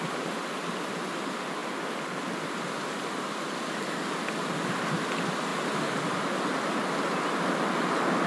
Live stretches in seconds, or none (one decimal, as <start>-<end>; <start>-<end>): 0.0-8.3